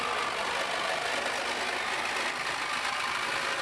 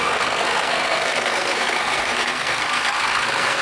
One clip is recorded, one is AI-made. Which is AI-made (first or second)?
second